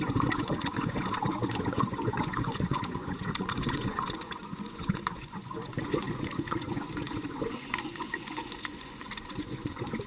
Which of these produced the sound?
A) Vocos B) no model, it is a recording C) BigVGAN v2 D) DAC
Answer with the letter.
A